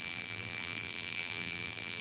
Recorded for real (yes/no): no